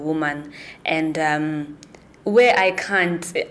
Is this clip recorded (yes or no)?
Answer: yes